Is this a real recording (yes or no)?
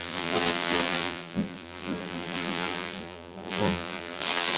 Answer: no